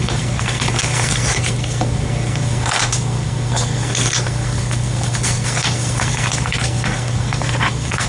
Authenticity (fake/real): fake